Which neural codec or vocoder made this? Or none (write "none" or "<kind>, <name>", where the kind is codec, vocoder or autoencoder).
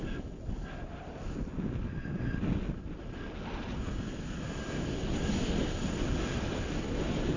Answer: none